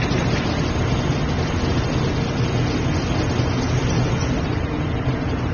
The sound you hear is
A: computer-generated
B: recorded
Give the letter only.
B